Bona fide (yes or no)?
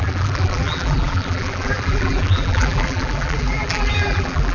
no